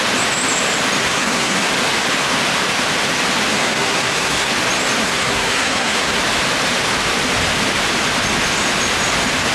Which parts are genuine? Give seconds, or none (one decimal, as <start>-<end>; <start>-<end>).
0.0-1.0; 1.7-3.5; 4.5-5.0; 6.2-9.5